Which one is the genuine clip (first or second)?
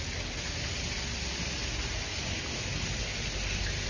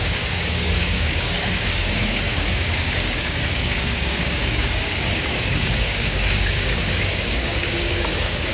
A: first